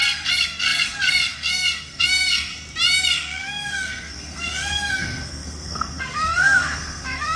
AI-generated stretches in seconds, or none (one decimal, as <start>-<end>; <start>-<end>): 0.0-2.5; 3.0-7.4